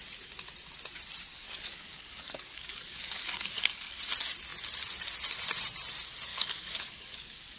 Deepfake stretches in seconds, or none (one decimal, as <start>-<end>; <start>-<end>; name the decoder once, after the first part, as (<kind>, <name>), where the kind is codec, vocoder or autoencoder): 1.3-4.0 (codec, DAC); 6.3-7.6